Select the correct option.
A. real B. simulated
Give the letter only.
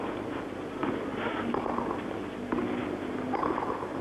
A